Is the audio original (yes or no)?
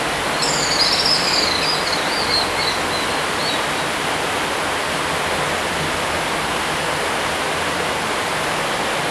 yes